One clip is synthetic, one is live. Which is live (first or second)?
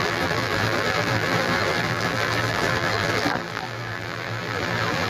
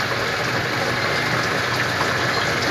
second